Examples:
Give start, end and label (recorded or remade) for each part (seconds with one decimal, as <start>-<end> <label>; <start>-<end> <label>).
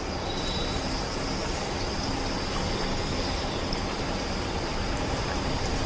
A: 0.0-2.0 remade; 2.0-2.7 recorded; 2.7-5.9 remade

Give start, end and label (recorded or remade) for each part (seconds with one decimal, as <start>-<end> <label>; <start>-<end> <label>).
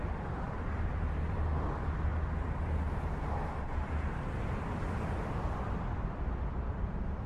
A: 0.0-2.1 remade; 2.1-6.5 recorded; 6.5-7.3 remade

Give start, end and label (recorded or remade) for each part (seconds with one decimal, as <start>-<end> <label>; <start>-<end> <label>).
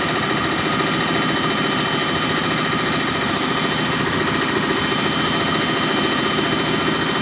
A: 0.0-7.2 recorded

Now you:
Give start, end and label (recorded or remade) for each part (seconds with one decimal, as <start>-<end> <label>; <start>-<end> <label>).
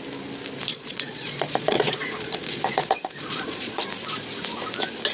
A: 0.0-0.7 recorded; 0.7-3.8 remade; 3.8-5.1 recorded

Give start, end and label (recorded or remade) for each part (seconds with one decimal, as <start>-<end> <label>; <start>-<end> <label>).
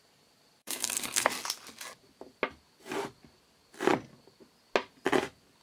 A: 0.0-0.6 recorded; 0.6-1.3 remade; 1.3-5.6 recorded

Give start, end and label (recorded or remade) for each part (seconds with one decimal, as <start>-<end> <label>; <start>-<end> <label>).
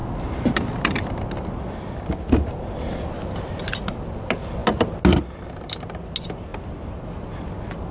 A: 0.0-7.9 recorded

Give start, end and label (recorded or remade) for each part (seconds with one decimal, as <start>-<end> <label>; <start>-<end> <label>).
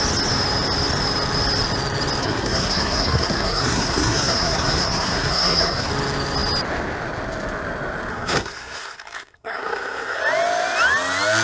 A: 0.0-2.2 recorded; 2.2-5.9 remade; 5.9-8.1 recorded; 8.1-10.2 remade; 10.2-11.4 recorded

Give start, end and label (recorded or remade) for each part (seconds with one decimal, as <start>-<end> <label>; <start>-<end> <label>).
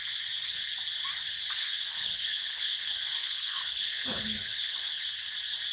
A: 0.0-1.6 recorded; 1.6-5.0 remade; 5.0-5.7 recorded